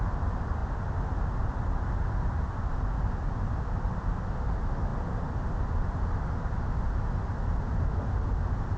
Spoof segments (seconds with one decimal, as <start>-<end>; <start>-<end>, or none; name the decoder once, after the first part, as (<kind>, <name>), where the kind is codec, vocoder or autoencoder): none